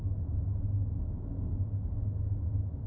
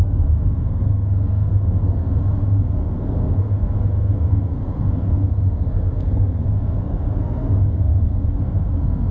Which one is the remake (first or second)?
second